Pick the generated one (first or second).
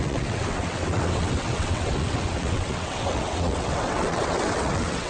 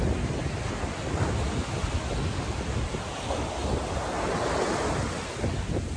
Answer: first